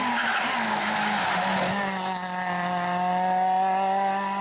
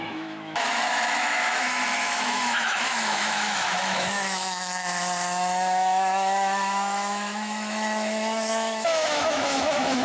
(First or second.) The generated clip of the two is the second